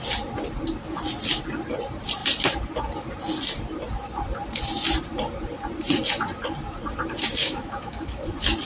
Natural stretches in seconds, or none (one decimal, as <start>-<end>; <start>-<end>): 0.0-7.4; 8.2-8.7